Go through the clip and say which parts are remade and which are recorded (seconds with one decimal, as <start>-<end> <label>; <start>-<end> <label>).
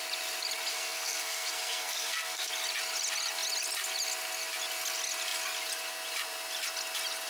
0.0-0.7 recorded; 0.7-2.5 remade; 2.5-7.3 recorded